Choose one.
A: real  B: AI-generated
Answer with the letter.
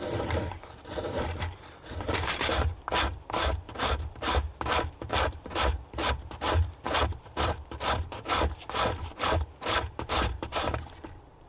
B